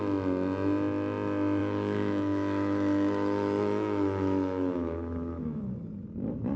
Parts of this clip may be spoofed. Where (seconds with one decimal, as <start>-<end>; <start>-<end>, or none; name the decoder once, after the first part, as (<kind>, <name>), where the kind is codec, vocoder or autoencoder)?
1.6-5.6 (autoencoder, DAC-VAE)